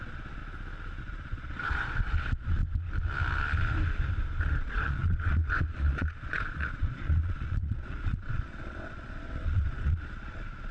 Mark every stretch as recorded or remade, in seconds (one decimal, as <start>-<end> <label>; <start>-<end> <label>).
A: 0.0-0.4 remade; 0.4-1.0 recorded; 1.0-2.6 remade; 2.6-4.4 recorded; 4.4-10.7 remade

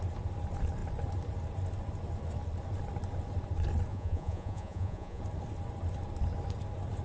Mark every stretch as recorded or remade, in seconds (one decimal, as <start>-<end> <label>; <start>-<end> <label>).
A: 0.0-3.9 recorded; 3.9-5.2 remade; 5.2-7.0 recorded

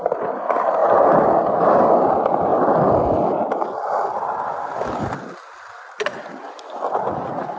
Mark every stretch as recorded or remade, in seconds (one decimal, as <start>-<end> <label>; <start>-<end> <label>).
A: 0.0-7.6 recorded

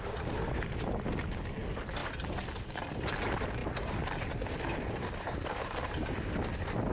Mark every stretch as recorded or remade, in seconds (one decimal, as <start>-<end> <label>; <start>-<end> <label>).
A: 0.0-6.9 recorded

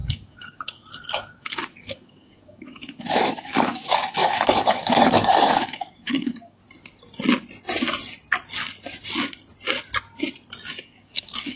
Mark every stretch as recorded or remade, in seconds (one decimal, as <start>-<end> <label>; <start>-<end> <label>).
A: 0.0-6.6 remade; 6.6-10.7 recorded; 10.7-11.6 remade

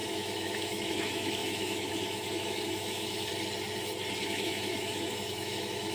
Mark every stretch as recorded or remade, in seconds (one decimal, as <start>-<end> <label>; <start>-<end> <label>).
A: 0.0-3.3 remade; 3.3-4.2 recorded; 4.2-5.9 remade

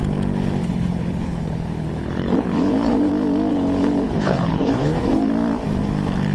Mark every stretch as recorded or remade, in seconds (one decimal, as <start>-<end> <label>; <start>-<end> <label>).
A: 0.0-0.6 recorded; 0.6-3.1 remade; 3.1-3.5 recorded; 3.5-5.3 remade; 5.3-6.3 recorded